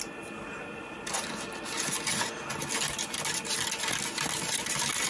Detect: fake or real real